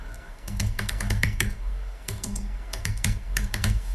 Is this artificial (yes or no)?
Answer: yes